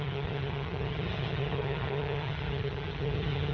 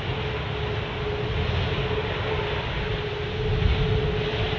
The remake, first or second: first